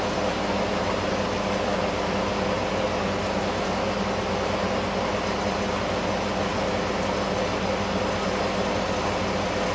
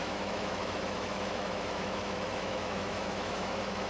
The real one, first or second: first